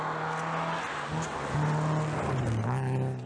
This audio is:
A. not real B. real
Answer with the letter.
B